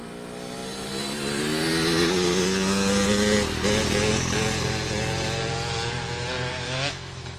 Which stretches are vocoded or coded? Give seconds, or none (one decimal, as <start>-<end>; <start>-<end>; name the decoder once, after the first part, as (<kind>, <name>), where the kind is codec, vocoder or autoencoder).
6.5-7.4 (autoencoder, DAC-VAE)